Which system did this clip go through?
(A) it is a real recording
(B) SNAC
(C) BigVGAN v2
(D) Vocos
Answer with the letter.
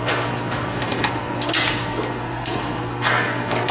B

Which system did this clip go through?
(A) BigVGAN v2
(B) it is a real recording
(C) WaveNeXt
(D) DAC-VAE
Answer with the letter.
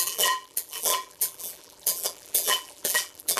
A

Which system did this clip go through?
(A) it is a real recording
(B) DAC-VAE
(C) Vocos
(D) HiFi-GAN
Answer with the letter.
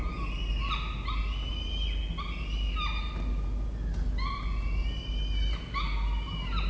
A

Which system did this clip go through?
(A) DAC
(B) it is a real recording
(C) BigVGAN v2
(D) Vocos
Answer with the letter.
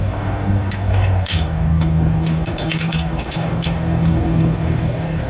A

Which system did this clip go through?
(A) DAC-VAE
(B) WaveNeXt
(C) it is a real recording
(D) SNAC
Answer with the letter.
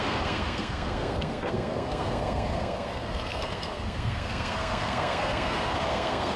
D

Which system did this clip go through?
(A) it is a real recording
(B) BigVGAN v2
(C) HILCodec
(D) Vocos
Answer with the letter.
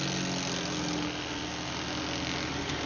A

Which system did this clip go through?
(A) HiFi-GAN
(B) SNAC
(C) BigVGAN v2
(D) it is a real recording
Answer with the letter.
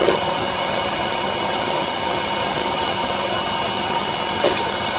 A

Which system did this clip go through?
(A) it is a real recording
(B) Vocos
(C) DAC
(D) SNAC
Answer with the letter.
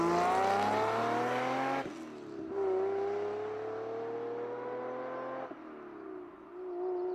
A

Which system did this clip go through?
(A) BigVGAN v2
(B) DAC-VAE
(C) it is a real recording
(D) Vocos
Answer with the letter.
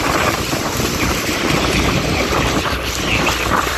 A